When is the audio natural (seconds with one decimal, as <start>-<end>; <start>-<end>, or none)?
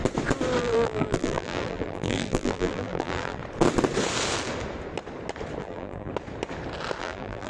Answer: 0.0-0.6; 3.4-5.6; 6.1-7.0